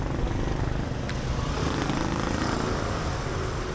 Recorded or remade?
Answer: recorded